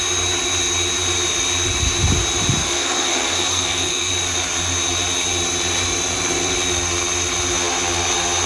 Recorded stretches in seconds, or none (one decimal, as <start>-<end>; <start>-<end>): 0.0-2.6; 4.1-8.5